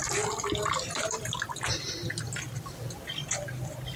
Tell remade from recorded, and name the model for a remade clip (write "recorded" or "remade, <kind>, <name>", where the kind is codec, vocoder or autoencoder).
recorded